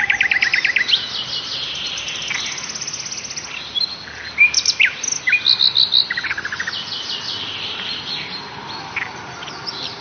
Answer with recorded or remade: recorded